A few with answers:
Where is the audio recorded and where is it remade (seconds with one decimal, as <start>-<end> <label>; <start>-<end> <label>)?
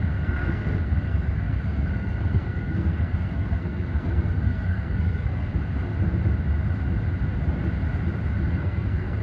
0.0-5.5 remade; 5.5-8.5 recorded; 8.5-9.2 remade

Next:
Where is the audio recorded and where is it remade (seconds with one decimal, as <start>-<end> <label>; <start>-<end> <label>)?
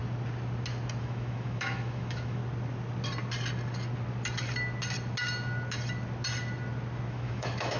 0.0-1.0 recorded; 1.0-2.4 remade; 2.4-7.1 recorded; 7.1-7.8 remade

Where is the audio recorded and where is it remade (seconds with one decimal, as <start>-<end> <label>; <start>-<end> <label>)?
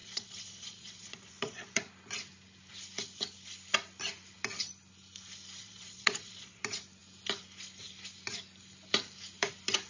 0.0-1.8 remade; 1.8-5.6 recorded; 5.6-6.6 remade; 6.6-9.9 recorded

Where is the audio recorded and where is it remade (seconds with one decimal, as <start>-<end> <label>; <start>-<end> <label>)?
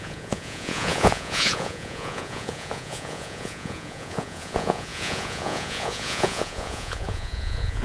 0.0-7.8 remade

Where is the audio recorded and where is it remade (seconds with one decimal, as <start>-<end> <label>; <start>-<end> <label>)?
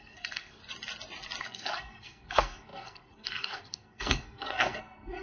0.0-0.6 remade; 0.6-1.4 recorded; 1.4-5.2 remade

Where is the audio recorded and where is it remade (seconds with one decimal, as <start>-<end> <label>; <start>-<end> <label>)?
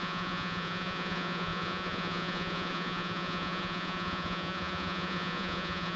0.0-6.0 remade